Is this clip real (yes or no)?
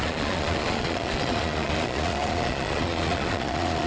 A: no